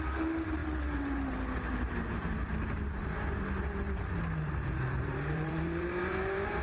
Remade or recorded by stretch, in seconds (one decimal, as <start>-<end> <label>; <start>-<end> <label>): 0.0-3.0 remade; 3.0-5.0 recorded; 5.0-6.6 remade